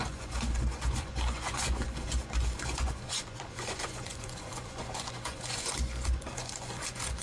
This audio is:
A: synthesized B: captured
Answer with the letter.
A